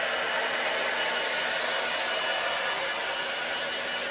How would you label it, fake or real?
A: real